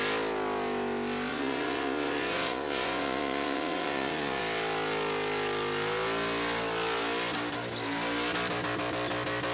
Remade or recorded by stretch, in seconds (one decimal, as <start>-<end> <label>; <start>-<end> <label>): 0.0-1.3 recorded; 1.3-4.4 remade; 4.4-9.5 recorded